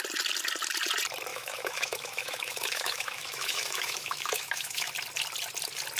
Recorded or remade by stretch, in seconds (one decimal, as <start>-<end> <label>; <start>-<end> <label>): 0.0-1.3 recorded; 1.3-4.9 remade; 4.9-6.0 recorded